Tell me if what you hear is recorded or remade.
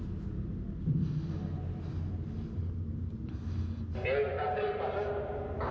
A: recorded